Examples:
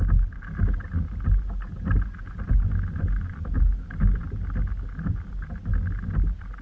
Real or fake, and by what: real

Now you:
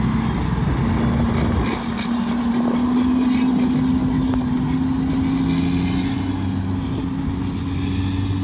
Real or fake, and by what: real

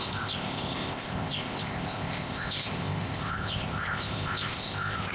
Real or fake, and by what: fake, codec, ZipCodec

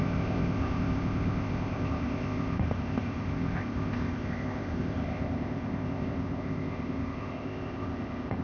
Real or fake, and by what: fake, codec, ZipCodec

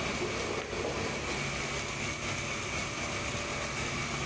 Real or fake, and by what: real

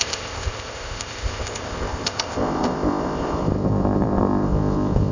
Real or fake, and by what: fake, codec, ZipCodec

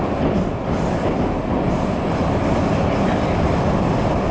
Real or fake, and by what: real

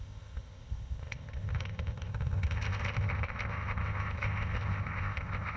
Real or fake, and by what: fake, codec, ZipCodec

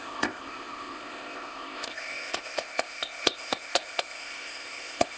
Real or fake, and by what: fake, codec, ZipCodec